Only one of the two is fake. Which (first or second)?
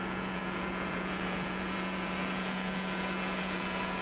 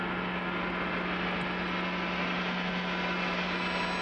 first